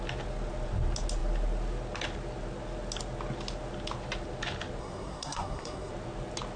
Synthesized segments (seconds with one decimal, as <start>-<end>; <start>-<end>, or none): 4.8-5.9